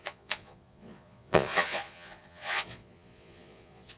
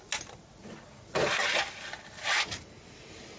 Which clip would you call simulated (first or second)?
first